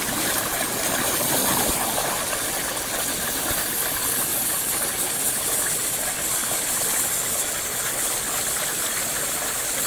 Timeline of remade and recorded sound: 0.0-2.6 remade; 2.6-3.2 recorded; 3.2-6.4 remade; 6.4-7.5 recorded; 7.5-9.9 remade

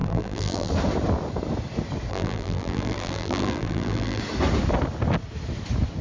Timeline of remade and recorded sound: 0.0-0.7 remade; 0.7-2.1 recorded; 2.1-4.2 remade; 4.2-6.0 recorded

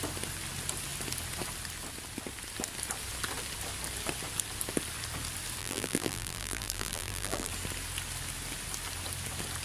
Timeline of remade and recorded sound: 0.0-5.6 recorded; 5.6-7.5 remade; 7.5-9.6 recorded